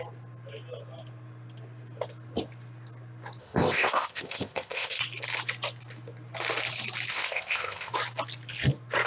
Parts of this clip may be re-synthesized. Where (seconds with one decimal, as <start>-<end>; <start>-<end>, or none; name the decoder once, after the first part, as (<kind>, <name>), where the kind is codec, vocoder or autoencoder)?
3.4-5.0 (codec, ZipCodec); 7.1-7.9

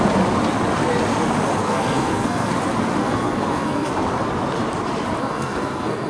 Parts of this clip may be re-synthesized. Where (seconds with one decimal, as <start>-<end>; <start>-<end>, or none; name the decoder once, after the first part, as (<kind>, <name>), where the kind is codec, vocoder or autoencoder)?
1.6-2.5 (codec, SNAC); 3.0-3.9; 5.2-6.1